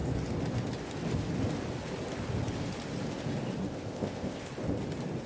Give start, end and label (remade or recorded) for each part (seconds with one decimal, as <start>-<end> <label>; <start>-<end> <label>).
0.0-3.7 recorded; 3.7-4.5 remade; 4.5-5.3 recorded